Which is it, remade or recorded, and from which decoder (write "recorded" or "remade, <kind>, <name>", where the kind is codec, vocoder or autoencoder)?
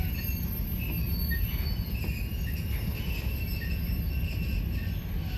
recorded